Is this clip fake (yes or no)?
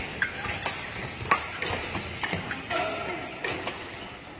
no